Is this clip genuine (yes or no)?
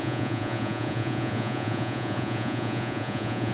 no